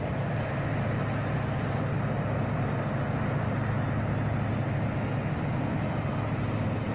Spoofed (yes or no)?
no